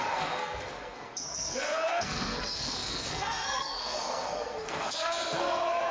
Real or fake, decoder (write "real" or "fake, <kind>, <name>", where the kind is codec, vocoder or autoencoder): fake, codec, SNAC